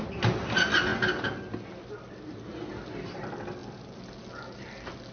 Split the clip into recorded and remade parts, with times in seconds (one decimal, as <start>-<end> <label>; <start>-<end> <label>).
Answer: 0.0-5.1 recorded